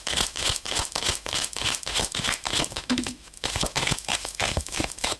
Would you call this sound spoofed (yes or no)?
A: yes